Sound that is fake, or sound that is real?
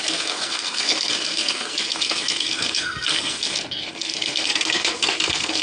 fake